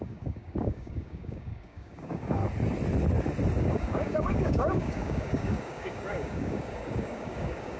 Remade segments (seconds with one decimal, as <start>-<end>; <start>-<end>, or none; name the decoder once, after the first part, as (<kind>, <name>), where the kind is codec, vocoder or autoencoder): 0.0-2.4 (codec, DAC); 3.6-7.8